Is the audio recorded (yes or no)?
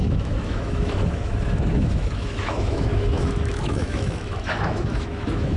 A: no